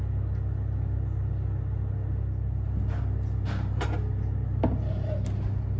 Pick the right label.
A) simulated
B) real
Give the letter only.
B